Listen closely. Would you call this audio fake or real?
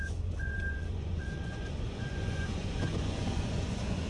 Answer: fake